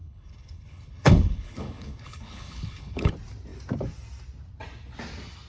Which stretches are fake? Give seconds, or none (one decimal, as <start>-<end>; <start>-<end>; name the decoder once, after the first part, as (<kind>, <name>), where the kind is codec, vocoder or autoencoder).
0.0-3.1 (codec, HILCodec)